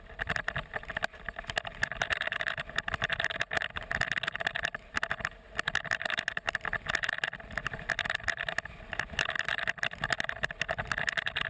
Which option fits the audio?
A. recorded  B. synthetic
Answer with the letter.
A